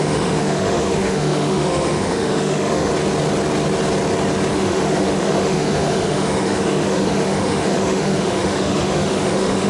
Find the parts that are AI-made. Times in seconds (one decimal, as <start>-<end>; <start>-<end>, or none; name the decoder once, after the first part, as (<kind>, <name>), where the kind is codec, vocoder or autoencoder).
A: 0.0-2.9 (autoencoder, DAC-VAE); 4.5-9.7